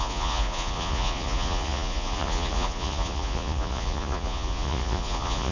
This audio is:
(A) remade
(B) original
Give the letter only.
A